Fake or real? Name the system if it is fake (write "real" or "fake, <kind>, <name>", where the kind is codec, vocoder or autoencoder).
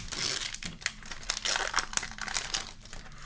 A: real